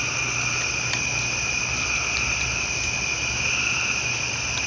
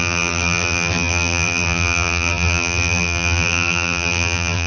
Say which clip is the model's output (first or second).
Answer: second